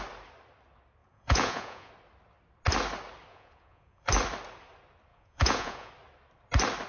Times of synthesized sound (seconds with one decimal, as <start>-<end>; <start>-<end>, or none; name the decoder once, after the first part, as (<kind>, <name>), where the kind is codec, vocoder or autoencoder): 1.0-1.9 (vocoder, Vocos); 3.3-4.1; 5.1-5.9